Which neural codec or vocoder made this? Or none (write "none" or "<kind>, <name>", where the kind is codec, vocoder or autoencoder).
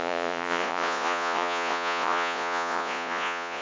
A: vocoder, Vocos